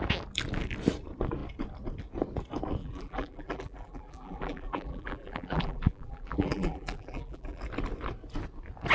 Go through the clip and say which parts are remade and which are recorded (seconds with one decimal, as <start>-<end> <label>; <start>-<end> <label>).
0.0-2.8 recorded; 2.8-7.6 remade; 7.6-8.9 recorded